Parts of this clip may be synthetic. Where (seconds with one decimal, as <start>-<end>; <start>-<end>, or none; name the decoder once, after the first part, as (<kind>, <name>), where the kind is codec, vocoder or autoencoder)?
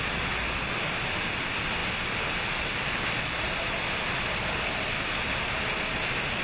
1.8-5.6 (vocoder, BigVGAN v2)